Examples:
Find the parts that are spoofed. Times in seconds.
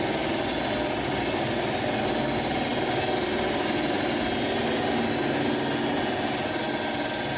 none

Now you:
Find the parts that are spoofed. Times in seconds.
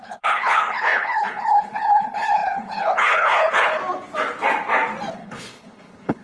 0.0-3.8 (codec, HILCodec); 5.1-6.2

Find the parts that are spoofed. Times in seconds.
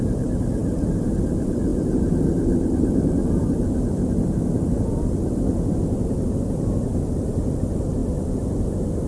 none